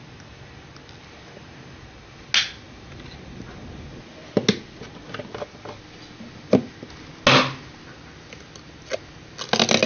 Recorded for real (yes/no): yes